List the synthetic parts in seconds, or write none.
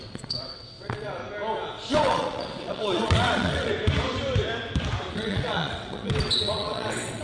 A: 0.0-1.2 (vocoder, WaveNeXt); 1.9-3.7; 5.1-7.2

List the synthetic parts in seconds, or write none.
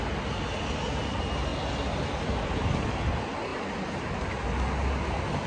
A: none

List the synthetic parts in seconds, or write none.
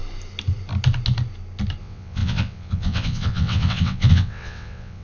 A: 1.8-5.0 (vocoder, WaveNeXt)